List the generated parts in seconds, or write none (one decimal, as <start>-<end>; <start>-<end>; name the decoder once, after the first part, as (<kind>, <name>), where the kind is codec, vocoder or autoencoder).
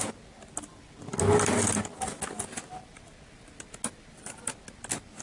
none